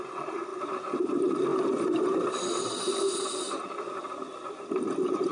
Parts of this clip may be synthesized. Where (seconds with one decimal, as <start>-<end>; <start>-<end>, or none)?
none

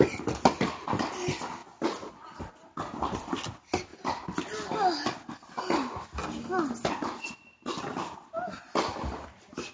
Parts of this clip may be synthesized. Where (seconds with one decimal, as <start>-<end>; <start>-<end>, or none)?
none